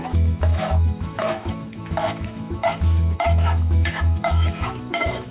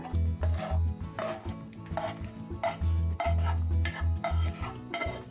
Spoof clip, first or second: first